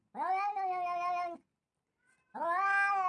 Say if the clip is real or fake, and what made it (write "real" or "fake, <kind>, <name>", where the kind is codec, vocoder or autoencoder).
real